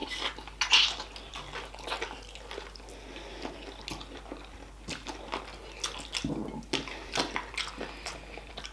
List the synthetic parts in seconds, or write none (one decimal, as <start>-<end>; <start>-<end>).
none